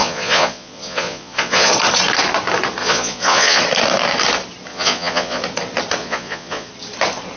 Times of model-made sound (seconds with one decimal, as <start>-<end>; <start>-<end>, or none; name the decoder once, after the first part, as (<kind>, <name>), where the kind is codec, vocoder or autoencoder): 0.0-1.7 (vocoder, Vocos); 2.8-3.6; 4.7-5.4; 6.0-6.7